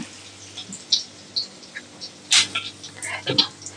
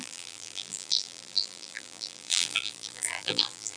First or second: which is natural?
first